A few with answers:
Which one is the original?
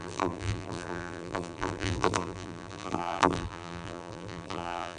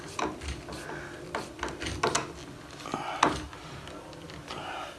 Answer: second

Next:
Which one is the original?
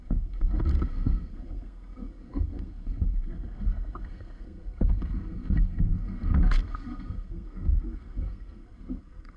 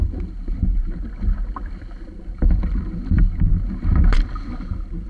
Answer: second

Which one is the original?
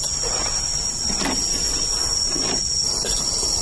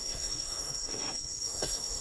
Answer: first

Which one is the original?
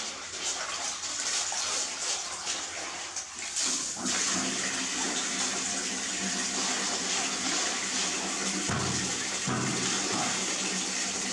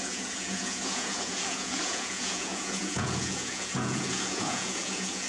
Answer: first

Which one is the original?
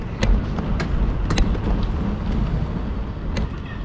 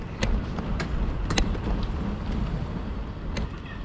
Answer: first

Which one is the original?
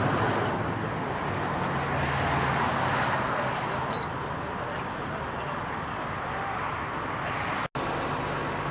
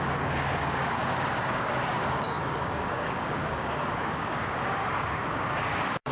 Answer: first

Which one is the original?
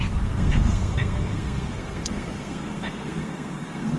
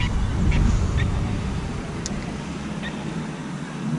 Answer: second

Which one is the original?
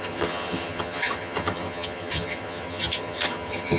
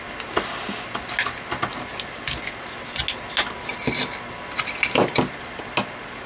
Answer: second